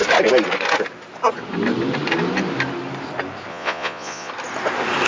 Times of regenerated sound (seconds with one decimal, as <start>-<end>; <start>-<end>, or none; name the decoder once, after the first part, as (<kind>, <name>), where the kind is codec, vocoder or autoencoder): 3.5-4.3 (vocoder, Vocos)